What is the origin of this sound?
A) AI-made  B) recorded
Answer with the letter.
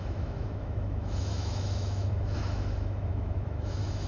A